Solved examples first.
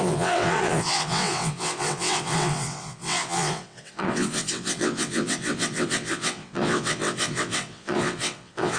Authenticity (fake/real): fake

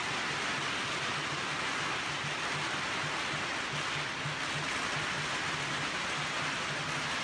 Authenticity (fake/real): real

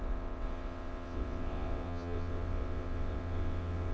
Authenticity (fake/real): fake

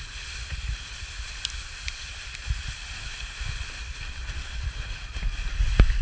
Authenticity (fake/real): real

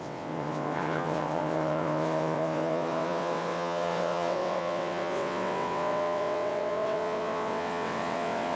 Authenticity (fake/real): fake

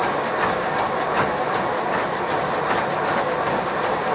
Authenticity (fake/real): real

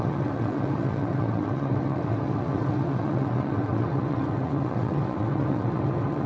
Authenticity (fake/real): fake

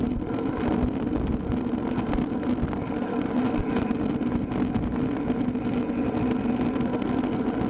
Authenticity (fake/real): real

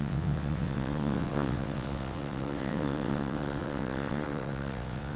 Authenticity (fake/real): fake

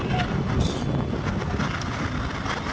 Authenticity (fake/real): real